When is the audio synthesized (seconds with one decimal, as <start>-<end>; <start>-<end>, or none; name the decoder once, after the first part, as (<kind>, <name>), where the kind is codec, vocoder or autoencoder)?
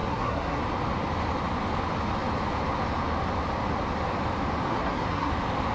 0.0-0.6 (codec, SNAC); 4.7-5.3